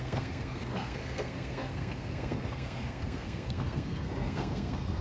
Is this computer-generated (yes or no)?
yes